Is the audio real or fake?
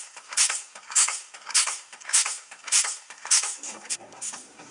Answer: fake